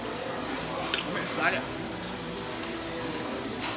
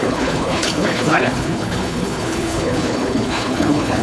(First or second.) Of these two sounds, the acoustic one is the first